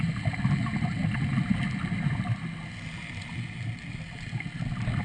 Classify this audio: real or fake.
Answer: real